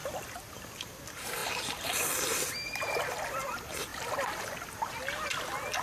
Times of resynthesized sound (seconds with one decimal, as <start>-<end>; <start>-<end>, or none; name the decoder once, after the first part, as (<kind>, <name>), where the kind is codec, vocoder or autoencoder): 0.0-0.6 (vocoder, BigVGAN v2); 1.4-2.4; 3.9-4.9

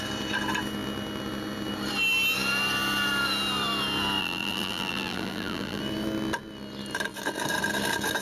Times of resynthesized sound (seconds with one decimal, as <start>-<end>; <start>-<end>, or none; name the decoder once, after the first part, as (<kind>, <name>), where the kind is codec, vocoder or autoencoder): 4.2-5.8 (vocoder, BigVGAN v2)

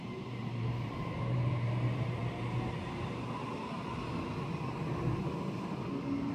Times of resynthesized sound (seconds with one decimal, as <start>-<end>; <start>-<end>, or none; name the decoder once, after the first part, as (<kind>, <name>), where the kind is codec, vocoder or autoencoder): 0.0-2.2 (vocoder, BigVGAN v2)

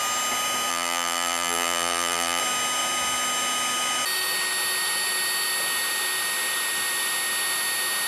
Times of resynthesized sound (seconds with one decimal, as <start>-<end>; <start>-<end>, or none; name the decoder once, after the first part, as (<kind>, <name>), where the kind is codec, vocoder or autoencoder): 0.7-2.4 (vocoder, BigVGAN v2)

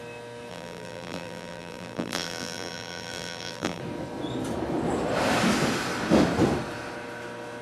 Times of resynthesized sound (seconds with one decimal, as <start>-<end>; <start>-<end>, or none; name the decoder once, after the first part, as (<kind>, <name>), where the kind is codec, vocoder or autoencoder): 0.5-3.8 (vocoder, BigVGAN v2)

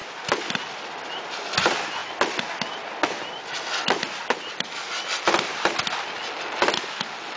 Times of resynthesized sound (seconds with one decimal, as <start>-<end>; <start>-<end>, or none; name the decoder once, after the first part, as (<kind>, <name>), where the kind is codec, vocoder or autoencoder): none

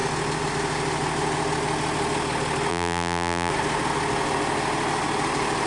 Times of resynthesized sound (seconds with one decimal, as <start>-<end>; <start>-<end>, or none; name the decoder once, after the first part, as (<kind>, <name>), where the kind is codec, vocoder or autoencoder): 2.7-3.5 (vocoder, BigVGAN v2)

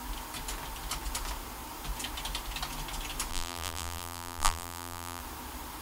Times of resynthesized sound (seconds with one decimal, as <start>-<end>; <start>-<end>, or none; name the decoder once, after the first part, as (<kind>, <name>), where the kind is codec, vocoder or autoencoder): 3.3-5.2 (vocoder, BigVGAN v2)